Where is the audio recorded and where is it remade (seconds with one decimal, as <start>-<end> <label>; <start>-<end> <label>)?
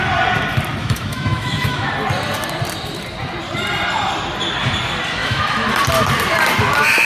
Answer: 0.0-0.8 recorded; 0.8-1.9 remade; 1.9-5.2 recorded; 5.2-5.7 remade; 5.7-7.0 recorded